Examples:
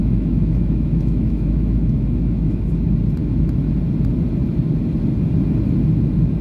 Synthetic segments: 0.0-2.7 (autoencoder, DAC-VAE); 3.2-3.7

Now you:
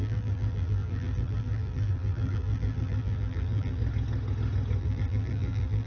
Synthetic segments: 0.0-3.8 (vocoder, BigVGAN v2); 4.8-5.9